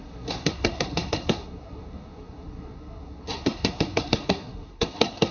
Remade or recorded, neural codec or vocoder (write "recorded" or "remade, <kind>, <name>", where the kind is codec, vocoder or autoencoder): remade, codec, SNAC